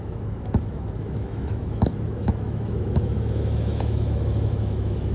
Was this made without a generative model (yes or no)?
no